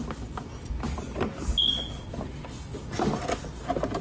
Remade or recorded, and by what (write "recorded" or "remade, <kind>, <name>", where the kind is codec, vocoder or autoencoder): recorded